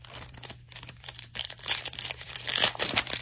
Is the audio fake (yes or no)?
yes